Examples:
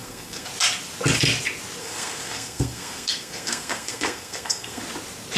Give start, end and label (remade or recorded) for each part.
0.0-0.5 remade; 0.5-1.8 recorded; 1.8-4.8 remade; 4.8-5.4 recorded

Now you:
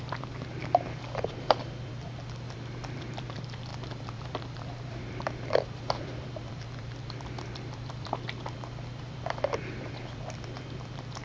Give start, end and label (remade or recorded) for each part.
0.0-0.6 remade; 0.6-1.3 recorded; 1.3-11.2 remade

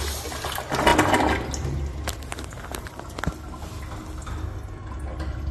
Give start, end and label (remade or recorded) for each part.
0.0-5.5 recorded

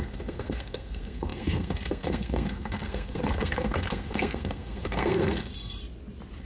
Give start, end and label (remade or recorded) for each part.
0.0-5.5 remade; 5.5-6.4 recorded